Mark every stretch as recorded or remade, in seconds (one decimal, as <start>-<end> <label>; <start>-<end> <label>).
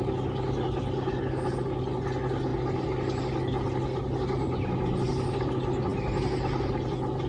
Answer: 0.0-7.3 recorded